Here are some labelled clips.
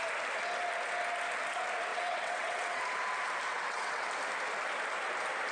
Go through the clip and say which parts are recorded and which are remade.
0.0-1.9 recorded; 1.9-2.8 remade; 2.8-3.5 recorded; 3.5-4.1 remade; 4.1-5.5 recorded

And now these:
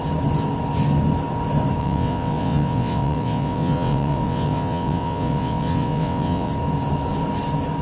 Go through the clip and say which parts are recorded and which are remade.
0.0-1.8 recorded; 1.8-6.5 remade; 6.5-7.8 recorded

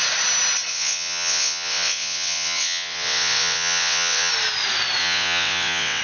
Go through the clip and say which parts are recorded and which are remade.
0.0-0.7 recorded; 0.7-4.3 remade; 4.3-5.0 recorded; 5.0-6.0 remade

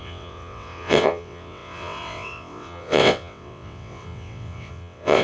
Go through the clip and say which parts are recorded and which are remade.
0.0-5.2 remade

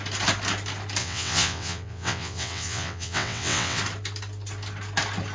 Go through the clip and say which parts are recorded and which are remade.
0.0-1.0 recorded; 1.0-3.8 remade; 3.8-5.3 recorded

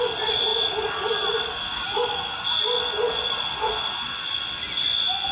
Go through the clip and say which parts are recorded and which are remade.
0.0-5.3 recorded